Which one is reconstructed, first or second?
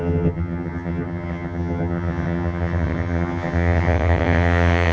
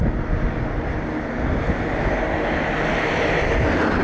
first